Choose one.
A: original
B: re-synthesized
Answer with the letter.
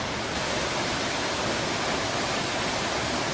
A